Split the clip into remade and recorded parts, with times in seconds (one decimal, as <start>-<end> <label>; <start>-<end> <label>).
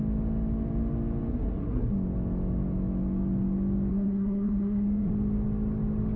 0.0-1.3 recorded; 1.3-1.9 remade; 1.9-3.9 recorded; 3.9-5.1 remade; 5.1-6.2 recorded